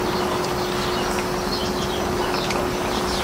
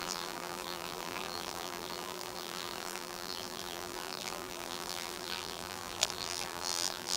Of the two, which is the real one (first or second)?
first